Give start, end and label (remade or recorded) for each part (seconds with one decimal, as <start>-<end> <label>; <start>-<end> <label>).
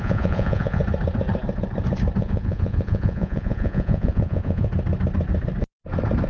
0.0-0.8 remade; 0.8-2.2 recorded; 2.2-4.7 remade; 4.7-6.3 recorded